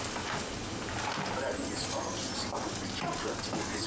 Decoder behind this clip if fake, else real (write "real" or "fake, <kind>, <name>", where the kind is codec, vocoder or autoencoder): real